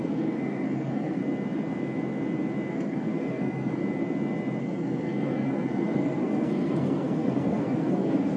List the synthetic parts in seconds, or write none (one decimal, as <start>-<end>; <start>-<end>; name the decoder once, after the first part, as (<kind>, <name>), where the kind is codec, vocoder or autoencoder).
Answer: 0.0-1.2 (codec, SNAC); 2.7-3.8; 4.6-8.4